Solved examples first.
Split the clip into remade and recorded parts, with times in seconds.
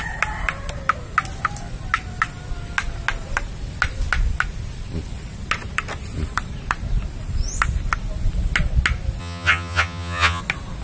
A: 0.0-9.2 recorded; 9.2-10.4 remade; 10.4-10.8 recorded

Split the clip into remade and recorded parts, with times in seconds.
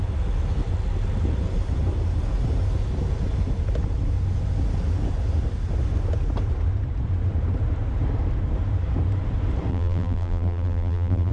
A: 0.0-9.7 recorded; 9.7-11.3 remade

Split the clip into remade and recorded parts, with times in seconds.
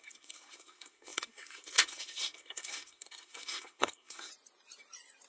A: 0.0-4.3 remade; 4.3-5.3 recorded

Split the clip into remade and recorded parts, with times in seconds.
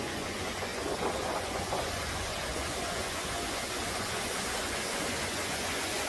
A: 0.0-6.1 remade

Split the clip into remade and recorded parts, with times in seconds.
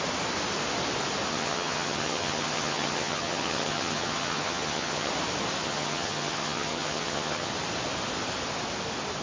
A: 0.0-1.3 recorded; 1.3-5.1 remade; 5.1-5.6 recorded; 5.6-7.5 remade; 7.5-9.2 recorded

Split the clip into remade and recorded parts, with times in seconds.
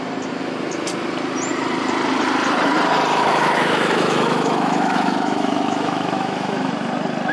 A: 0.0-3.1 recorded; 3.1-6.7 remade; 6.7-7.3 recorded